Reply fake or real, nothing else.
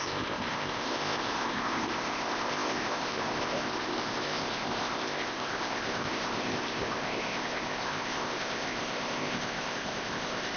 fake